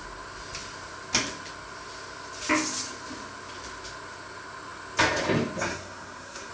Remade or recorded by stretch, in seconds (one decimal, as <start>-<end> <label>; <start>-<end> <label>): 0.0-5.7 recorded; 5.7-6.5 remade